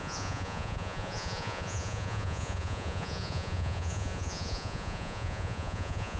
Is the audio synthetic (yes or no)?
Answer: yes